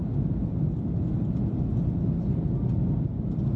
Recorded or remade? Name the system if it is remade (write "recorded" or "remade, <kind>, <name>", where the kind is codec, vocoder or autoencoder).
recorded